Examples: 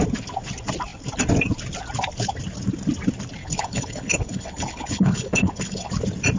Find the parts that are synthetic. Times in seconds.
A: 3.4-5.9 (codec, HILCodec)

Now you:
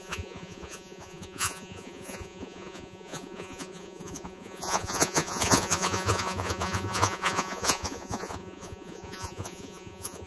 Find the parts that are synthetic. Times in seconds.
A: 0.0-10.3 (vocoder, Vocos)

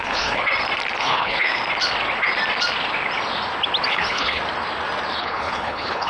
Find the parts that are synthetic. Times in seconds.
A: 0.0-0.4 (codec, HILCodec); 1.0-1.6; 3.9-4.4; 5.2-6.1

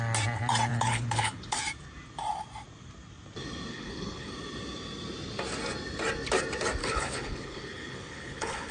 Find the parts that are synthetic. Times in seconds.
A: 0.7-1.6 (codec, HILCodec); 3.7-4.3; 6.8-8.7

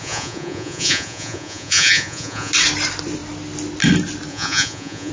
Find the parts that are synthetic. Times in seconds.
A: 0.0-2.5 (vocoder, Vocos); 4.3-5.1